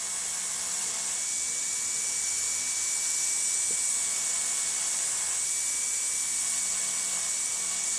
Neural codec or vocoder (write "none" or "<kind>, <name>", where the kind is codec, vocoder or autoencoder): none